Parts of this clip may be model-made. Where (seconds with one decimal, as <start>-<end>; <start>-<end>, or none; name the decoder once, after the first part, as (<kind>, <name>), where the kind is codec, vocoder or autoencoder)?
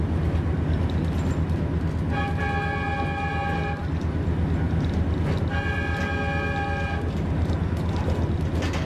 none